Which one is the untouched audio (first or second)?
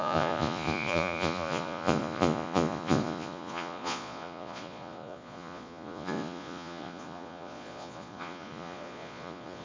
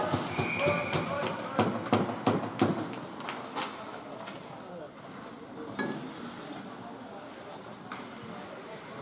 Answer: second